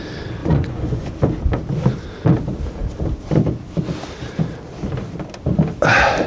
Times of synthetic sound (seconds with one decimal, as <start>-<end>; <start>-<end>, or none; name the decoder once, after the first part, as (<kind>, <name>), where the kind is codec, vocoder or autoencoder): 0.4-1.1 (vocoder, Vocos)